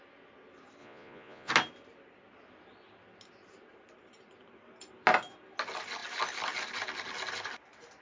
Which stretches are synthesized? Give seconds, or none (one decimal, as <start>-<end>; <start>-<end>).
0.8-1.5